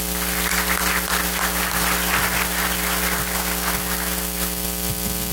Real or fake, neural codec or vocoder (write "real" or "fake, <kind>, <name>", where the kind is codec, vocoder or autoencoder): real